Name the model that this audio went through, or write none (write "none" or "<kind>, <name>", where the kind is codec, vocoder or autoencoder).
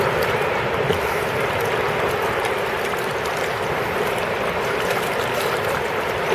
none